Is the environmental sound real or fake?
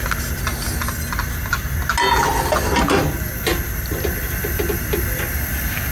real